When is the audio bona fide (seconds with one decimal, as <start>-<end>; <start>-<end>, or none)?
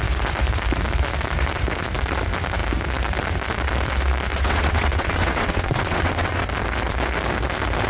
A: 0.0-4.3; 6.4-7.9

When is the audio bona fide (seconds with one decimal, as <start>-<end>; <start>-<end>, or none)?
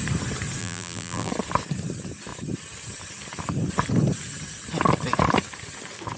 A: 0.0-0.6; 1.3-6.2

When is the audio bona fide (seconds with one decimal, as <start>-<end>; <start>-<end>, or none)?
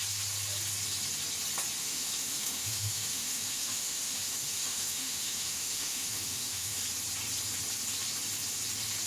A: 0.0-1.8; 6.8-9.1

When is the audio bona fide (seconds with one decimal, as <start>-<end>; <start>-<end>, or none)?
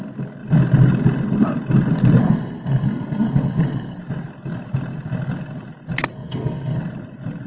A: 0.0-2.2; 4.0-6.1; 6.8-7.5